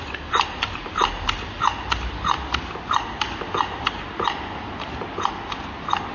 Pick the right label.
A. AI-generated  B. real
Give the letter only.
B